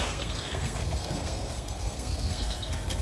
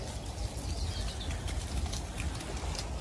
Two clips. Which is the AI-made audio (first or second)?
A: first